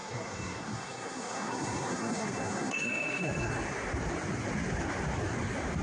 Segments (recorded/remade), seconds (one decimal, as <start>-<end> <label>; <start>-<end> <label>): 0.0-3.5 remade; 3.5-5.8 recorded